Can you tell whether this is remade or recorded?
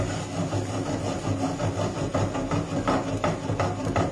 recorded